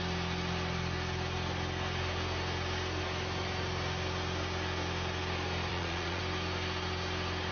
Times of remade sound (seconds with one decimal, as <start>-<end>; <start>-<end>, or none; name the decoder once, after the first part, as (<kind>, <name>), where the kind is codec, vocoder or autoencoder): 5.7-6.2 (vocoder, Vocos)

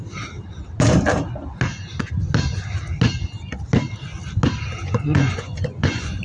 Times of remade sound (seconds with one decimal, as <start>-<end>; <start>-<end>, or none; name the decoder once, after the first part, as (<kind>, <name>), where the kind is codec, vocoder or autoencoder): 4.8-6.2 (vocoder, Vocos)

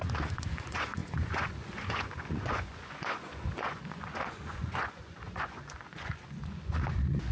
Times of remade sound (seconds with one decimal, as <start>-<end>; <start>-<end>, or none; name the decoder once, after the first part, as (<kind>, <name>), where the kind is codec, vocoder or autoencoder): 0.0-7.3 (vocoder, Vocos)

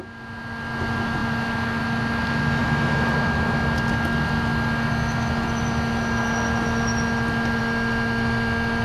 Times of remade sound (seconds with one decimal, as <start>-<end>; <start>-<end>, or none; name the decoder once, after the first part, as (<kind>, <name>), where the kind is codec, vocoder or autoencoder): none

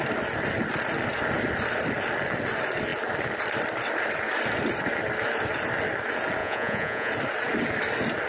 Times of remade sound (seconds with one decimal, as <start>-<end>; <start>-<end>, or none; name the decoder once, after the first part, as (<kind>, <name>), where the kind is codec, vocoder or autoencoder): 6.4-7.1 (vocoder, Vocos)

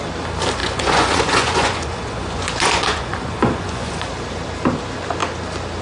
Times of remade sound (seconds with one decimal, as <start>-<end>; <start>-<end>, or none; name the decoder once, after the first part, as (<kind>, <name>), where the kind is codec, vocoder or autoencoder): 0.6-4.1 (vocoder, Vocos)